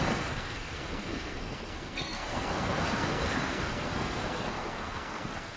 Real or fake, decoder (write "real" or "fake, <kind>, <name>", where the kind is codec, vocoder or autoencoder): fake, codec, SNAC